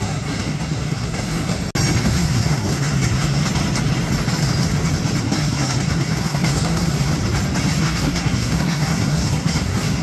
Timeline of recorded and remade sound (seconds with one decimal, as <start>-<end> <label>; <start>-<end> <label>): 0.0-1.5 remade; 1.5-2.0 recorded; 2.0-3.4 remade; 3.4-5.2 recorded; 5.2-7.1 remade; 7.1-7.8 recorded; 7.8-10.0 remade